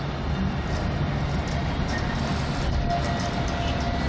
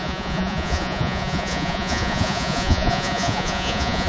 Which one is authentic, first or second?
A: first